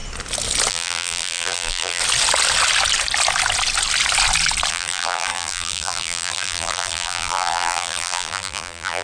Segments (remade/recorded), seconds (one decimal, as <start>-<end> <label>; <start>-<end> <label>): 0.0-0.7 recorded; 0.7-2.0 remade; 2.0-4.7 recorded; 4.7-9.0 remade